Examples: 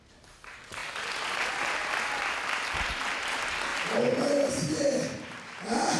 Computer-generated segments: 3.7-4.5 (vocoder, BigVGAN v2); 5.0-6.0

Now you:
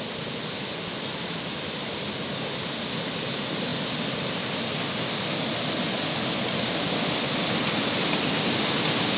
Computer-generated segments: none

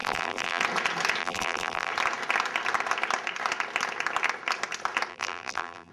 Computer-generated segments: 0.0-0.6 (vocoder, BigVGAN v2); 1.2-1.9; 5.1-5.9

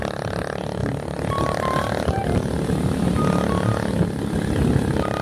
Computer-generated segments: 0.8-3.9 (vocoder, BigVGAN v2)

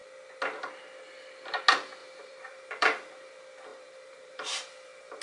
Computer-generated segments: 2.0-3.3 (vocoder, BigVGAN v2); 3.7-5.2